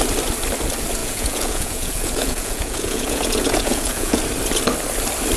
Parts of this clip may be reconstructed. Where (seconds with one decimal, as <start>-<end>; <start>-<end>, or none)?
1.0-4.2